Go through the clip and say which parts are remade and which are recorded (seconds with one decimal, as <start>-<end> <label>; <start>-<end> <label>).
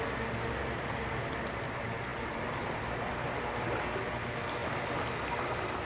0.0-2.1 recorded; 2.1-2.8 remade; 2.8-5.8 recorded